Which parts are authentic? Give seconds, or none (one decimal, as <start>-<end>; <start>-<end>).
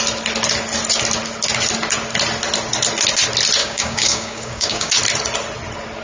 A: 0.0-3.6; 4.9-6.0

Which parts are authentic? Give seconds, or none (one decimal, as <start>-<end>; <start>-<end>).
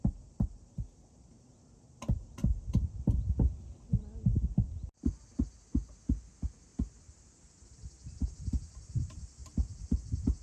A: 0.0-6.7; 8.5-9.4